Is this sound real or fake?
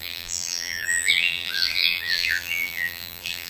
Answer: fake